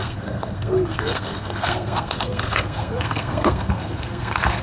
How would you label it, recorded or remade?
remade